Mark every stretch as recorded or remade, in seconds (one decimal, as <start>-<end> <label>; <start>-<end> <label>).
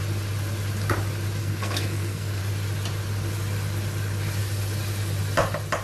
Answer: 0.0-1.4 recorded; 1.4-2.4 remade; 2.4-5.8 recorded